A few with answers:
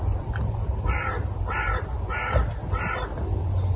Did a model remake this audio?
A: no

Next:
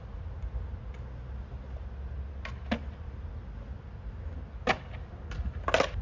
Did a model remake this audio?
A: no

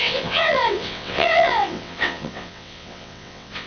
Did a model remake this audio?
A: yes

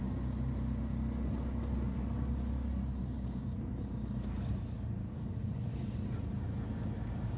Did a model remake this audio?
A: no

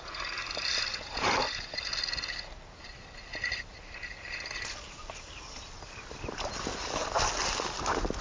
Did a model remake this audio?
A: no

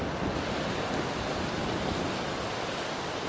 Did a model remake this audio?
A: no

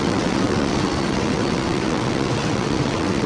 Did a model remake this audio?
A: yes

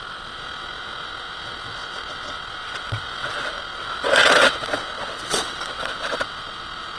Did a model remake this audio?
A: yes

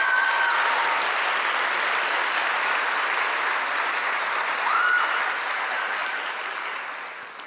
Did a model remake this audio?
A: no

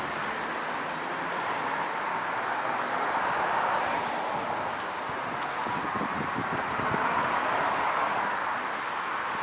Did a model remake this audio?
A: no